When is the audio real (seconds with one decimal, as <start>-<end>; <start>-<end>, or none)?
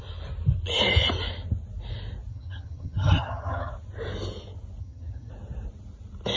0.0-2.3; 3.7-4.8; 5.3-6.4